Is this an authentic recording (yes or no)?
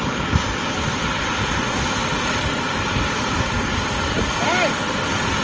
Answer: yes